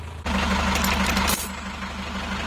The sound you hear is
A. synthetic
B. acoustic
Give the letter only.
B